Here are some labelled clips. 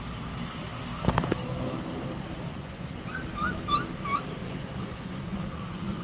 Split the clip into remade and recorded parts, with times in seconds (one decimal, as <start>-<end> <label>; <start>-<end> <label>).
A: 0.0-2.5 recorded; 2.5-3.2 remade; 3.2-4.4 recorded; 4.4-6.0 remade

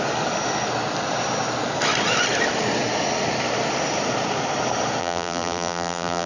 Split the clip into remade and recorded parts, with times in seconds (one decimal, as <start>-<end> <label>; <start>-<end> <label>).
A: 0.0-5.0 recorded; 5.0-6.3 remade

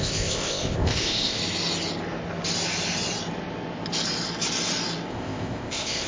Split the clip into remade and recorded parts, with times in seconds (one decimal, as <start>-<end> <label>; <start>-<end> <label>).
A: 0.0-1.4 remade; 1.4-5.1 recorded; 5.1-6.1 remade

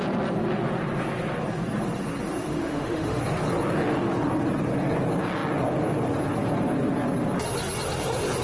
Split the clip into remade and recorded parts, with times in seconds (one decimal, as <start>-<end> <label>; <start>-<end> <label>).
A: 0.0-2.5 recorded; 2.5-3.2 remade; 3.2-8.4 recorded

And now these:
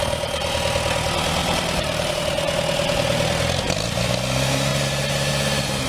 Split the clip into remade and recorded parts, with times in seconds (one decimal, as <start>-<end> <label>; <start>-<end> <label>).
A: 0.0-1.4 recorded; 1.4-2.1 remade; 2.1-4.7 recorded; 4.7-5.3 remade; 5.3-5.9 recorded